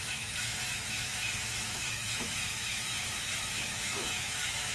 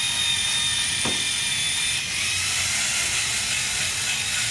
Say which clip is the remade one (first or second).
first